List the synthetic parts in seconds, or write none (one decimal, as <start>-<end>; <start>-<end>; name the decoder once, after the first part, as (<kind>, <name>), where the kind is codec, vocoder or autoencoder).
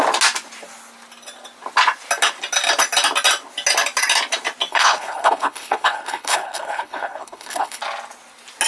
4.7-7.8 (codec, HILCodec)